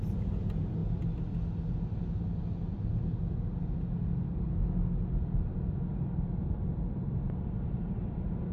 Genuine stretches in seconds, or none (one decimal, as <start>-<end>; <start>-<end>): 0.0-8.5